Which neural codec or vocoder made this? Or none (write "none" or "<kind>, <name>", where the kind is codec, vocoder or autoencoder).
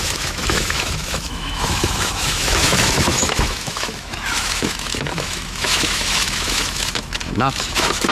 autoencoder, DAC-VAE